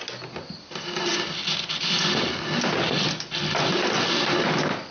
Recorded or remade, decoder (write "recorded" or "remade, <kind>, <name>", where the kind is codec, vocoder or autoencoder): recorded